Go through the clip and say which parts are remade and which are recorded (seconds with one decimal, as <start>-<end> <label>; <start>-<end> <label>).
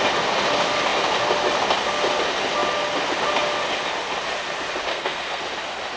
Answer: 0.0-4.9 recorded; 4.9-5.4 remade; 5.4-6.0 recorded